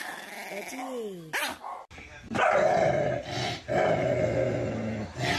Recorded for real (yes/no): yes